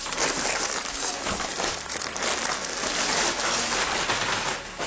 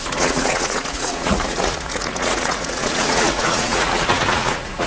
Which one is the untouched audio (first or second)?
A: first